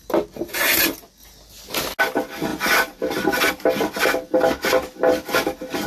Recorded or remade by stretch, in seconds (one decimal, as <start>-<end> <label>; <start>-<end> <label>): 0.0-5.9 recorded